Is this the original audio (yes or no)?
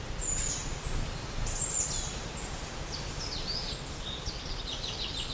yes